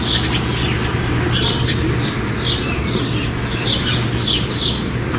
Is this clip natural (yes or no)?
yes